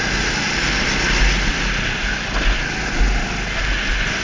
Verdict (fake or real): real